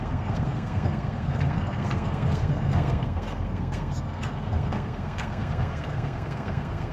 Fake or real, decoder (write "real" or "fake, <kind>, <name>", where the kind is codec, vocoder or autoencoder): fake, codec, SNAC